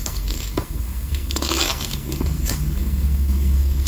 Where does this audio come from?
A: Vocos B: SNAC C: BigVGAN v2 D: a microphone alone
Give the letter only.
B